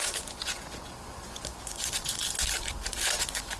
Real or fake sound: fake